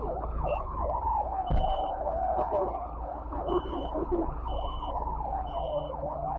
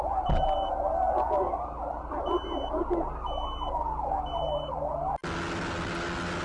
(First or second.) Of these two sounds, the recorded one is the second